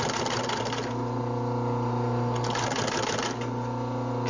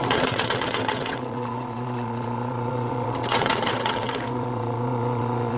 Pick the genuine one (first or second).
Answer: first